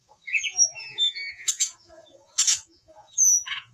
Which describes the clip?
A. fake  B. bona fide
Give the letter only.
A